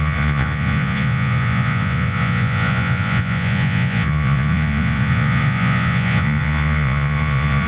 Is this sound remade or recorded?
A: remade